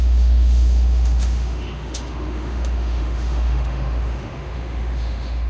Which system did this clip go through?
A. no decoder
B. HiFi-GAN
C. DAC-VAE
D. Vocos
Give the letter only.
C